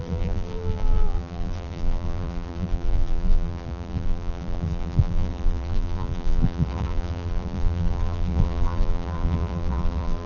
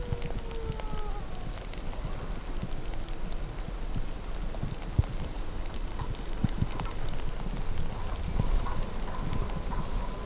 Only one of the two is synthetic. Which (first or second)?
first